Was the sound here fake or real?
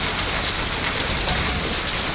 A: real